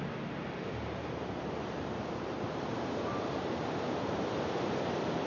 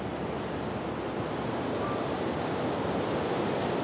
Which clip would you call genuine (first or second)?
second